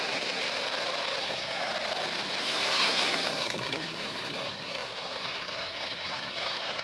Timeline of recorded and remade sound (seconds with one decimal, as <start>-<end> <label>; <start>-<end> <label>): 0.0-0.4 remade; 0.4-1.2 recorded; 1.2-1.7 remade; 1.7-2.4 recorded; 2.4-6.8 remade